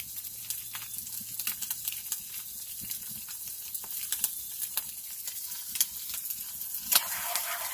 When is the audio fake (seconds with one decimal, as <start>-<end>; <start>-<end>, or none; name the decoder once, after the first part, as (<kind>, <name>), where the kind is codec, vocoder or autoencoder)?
none